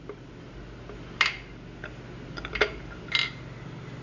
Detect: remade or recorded recorded